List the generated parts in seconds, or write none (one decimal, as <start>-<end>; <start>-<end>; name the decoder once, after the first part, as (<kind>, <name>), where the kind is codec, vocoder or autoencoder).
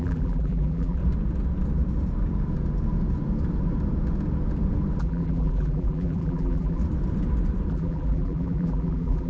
0.0-1.0 (vocoder, BigVGAN v2); 5.0-6.8; 7.7-9.3